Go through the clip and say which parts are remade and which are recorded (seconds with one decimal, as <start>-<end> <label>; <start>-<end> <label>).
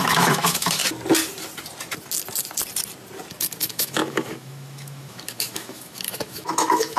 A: 0.0-0.8 remade; 0.8-3.6 recorded; 3.6-7.0 remade